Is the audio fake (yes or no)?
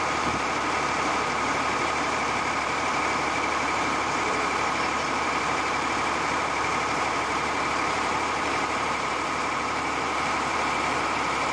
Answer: yes